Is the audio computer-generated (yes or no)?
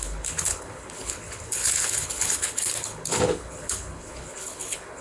yes